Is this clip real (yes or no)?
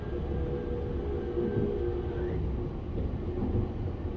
yes